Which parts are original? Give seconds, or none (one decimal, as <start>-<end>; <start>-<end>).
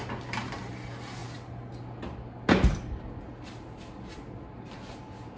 0.0-5.4